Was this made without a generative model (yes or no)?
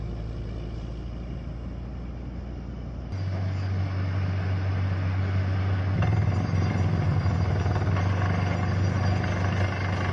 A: yes